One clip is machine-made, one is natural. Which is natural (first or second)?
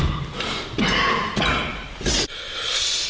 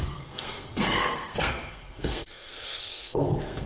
first